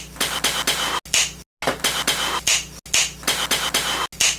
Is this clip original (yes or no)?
yes